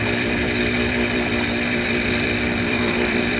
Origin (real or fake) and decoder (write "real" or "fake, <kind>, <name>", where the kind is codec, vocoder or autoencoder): fake, vocoder, BigVGAN v2